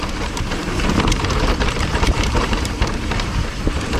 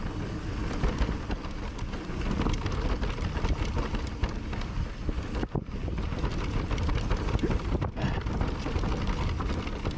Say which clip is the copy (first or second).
first